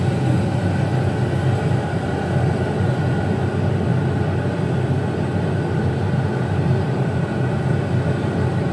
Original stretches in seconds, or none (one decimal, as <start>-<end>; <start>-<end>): 0.0-8.7